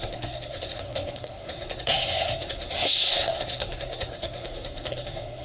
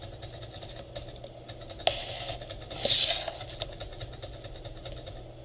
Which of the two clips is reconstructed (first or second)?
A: first